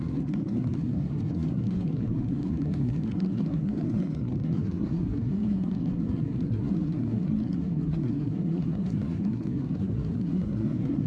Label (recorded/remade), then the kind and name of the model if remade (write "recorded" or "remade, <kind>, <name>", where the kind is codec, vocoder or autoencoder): remade, codec, SNAC